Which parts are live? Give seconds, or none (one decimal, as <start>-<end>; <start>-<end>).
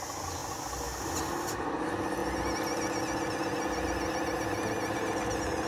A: 0.0-5.7